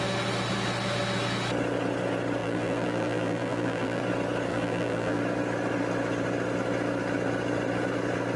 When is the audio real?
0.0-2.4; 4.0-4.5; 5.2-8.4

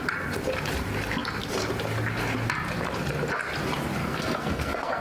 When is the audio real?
0.0-4.0

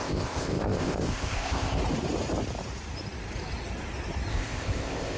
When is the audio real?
1.8-4.3

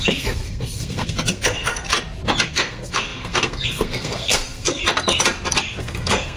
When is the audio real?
1.9-2.5; 4.8-5.8

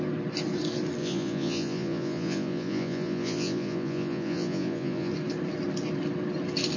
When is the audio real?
0.0-1.0; 5.1-6.8

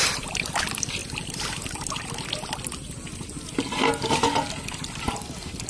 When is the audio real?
0.0-5.7